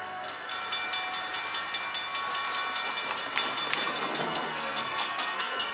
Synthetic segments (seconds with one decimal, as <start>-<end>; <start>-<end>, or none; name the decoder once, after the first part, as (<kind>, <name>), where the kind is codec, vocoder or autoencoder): 0.0-0.5 (codec, SNAC); 3.9-5.7